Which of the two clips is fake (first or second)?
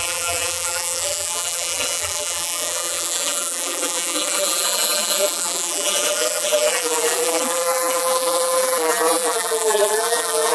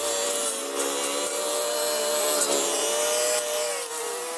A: first